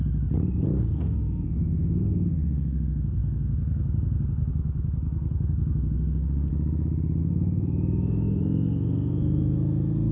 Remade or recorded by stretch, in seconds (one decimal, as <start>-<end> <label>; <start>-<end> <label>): 0.0-0.8 recorded; 0.8-6.5 remade; 6.5-7.2 recorded; 7.2-10.1 remade